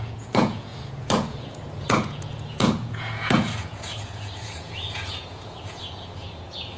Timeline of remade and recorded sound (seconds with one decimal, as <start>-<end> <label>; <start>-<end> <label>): 0.0-6.8 remade